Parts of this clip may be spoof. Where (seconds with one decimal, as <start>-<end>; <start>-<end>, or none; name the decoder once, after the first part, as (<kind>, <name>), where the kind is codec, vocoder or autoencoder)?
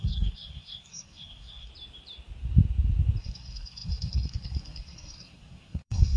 0.0-1.7 (codec, SNAC); 3.2-6.2